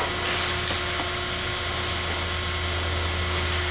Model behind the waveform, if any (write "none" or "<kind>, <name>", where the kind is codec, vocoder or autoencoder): none